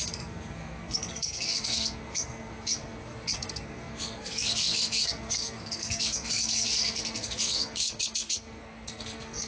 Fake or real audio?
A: fake